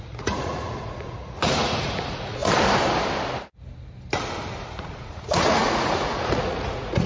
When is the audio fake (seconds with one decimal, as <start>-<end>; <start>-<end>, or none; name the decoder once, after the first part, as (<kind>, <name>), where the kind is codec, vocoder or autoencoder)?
0.0-2.4 (vocoder, Vocos); 4.6-7.1